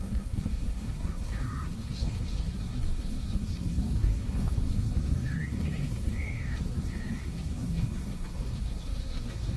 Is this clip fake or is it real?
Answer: fake